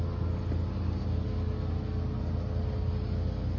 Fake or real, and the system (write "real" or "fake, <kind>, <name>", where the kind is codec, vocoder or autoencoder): real